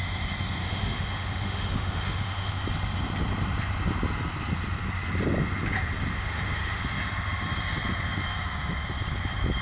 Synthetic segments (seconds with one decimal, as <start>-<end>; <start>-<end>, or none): 0.6-2.5; 6.1-6.8